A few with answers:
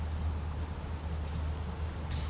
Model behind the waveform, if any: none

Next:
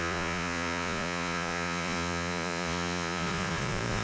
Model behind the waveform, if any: vocoder, Vocos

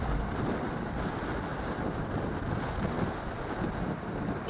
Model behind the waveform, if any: none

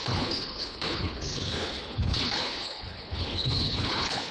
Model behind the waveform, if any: codec, HILCodec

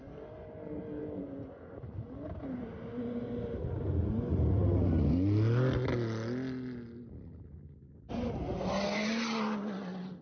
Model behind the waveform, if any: none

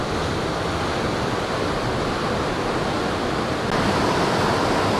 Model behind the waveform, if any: none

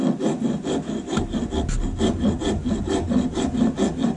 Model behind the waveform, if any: none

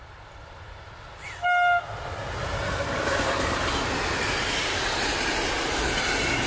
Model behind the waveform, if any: none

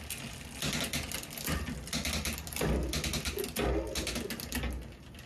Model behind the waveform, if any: none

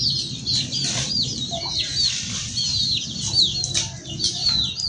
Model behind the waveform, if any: none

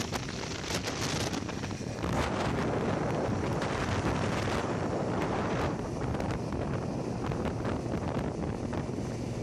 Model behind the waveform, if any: none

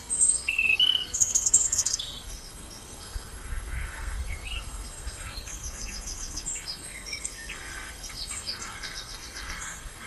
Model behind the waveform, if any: codec, SNAC